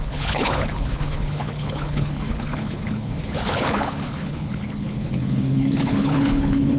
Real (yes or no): no